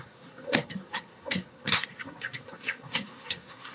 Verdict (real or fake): fake